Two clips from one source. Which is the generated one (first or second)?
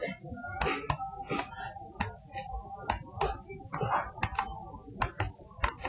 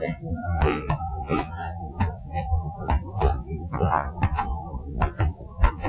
second